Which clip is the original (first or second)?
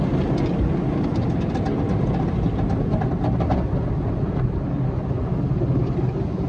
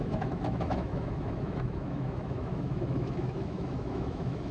first